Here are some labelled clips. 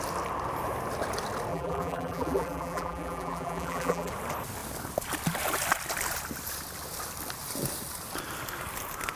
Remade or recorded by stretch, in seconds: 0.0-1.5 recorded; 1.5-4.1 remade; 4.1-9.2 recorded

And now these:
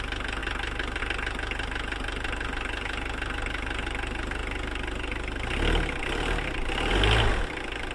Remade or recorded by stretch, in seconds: 0.0-0.4 recorded; 0.4-1.0 remade; 1.0-7.9 recorded

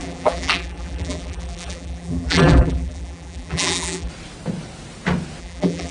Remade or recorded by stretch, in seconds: 0.0-4.1 remade; 4.1-5.4 recorded; 5.4-5.9 remade